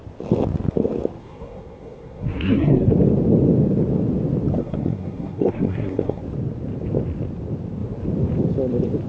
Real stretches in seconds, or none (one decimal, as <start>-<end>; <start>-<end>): 0.0-1.2; 2.9-4.5; 6.2-9.1